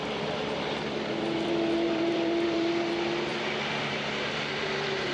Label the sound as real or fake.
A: fake